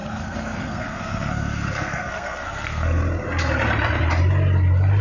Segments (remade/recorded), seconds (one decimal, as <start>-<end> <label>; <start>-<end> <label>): 0.0-3.0 remade; 3.0-5.0 recorded

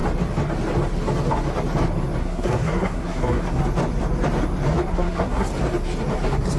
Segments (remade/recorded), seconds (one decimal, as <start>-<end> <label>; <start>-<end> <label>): 0.0-2.2 recorded; 2.2-3.6 remade; 3.6-4.9 recorded; 4.9-5.5 remade; 5.5-6.6 recorded

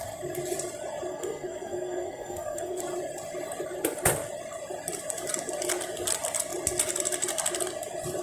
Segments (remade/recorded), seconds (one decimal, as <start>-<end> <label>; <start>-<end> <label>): 0.0-1.1 recorded; 1.1-2.8 remade; 2.8-8.2 recorded

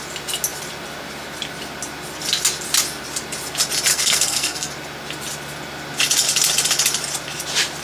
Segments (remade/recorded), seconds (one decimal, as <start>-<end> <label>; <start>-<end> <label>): 0.0-3.9 recorded; 3.9-4.7 remade; 4.7-7.8 recorded